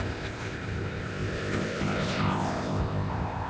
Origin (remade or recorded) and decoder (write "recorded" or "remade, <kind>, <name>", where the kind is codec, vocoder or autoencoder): remade, codec, ZipCodec